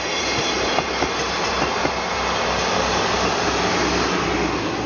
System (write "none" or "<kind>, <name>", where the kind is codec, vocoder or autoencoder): none